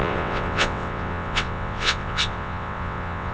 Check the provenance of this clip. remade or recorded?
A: remade